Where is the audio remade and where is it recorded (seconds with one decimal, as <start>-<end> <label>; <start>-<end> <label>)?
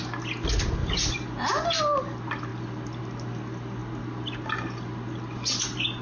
0.0-0.8 recorded; 0.8-1.8 remade; 1.8-6.0 recorded